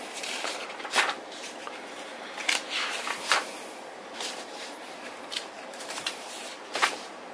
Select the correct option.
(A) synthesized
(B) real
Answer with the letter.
A